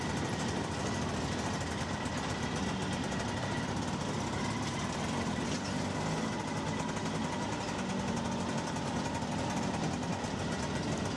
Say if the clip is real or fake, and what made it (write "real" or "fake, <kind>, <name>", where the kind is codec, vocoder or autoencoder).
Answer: real